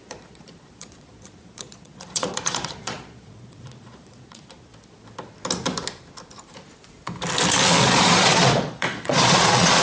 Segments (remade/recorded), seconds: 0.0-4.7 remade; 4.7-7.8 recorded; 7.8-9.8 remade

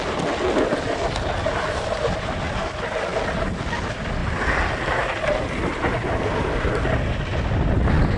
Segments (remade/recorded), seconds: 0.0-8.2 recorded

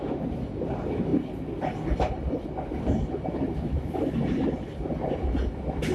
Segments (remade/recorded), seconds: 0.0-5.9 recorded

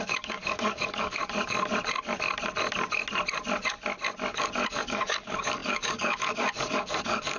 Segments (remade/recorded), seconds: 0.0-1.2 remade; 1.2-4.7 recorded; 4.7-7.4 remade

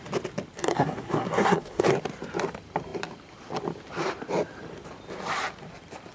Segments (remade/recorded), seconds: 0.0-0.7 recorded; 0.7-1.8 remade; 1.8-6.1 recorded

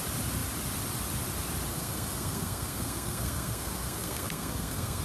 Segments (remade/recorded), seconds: 0.0-1.7 recorded; 1.7-5.0 remade

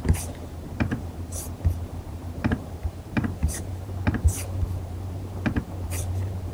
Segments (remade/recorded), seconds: 0.0-6.5 remade